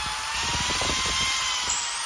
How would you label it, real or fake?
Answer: real